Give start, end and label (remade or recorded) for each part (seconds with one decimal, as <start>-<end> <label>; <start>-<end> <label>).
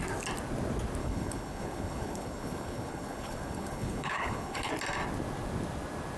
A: 0.0-1.0 recorded; 1.0-4.7 remade; 4.7-6.2 recorded